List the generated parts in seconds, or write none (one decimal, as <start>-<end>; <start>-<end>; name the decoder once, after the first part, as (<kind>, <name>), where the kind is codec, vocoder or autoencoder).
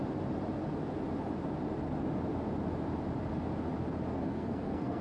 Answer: 4.1-5.0 (codec, SNAC)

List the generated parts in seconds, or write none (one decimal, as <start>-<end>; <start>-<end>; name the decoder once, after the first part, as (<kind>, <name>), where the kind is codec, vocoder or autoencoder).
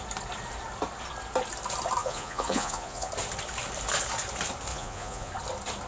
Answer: 2.0-3.1 (vocoder, Vocos); 4.7-5.3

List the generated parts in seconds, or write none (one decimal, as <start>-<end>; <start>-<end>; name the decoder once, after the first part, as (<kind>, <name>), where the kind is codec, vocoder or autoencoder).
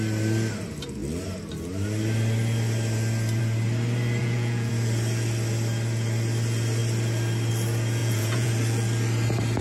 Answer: 4.2-4.7 (vocoder, Vocos); 8.0-8.5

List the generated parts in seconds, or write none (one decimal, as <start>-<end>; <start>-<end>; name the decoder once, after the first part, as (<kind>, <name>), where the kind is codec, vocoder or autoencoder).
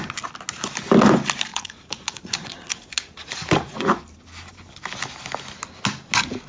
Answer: 1.5-4.0 (vocoder, Vocos)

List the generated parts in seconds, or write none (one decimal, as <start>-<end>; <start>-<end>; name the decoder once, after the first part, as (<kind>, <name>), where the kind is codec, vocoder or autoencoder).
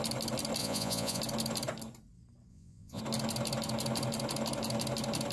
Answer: 0.6-1.2 (vocoder, Vocos); 2.5-3.0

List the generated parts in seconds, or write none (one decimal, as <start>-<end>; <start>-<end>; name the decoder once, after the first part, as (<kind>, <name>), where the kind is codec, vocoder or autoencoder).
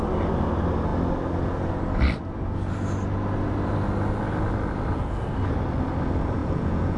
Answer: 6.4-7.0 (vocoder, Vocos)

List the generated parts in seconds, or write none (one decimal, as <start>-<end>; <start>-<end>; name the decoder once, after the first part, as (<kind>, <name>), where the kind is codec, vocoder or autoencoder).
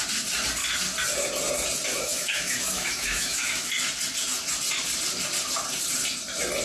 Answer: 1.9-3.7 (autoencoder, DAC-VAE)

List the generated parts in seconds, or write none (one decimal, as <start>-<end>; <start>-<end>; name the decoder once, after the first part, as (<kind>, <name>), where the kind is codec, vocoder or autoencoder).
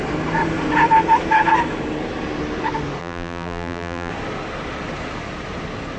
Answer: 3.0-4.1 (vocoder, BigVGAN v2)